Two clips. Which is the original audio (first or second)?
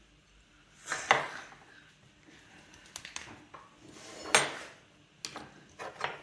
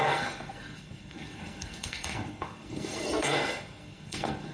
first